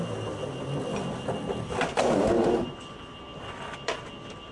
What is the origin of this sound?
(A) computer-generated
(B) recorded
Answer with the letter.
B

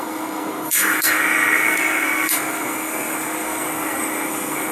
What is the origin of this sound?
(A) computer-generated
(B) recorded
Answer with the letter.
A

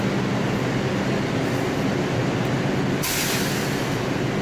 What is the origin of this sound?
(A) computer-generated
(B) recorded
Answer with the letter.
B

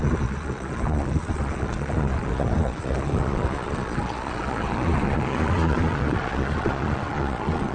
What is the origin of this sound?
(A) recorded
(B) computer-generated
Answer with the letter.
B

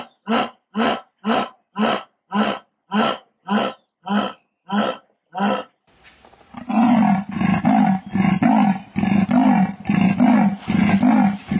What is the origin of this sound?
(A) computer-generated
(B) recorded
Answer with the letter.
B